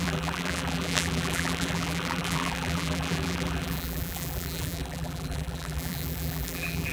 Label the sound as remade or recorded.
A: remade